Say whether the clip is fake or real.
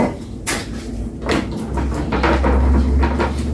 real